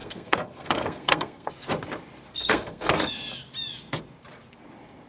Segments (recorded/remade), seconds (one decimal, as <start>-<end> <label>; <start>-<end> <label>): 0.0-1.5 remade; 1.5-2.3 recorded; 2.3-3.1 remade; 3.1-5.1 recorded

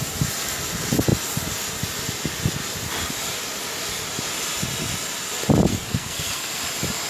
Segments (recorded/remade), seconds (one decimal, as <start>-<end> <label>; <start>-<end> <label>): 0.0-5.7 recorded; 5.7-6.6 remade; 6.6-7.1 recorded